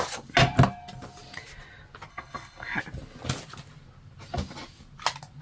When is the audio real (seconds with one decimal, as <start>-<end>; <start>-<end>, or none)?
0.0-2.1; 2.8-5.4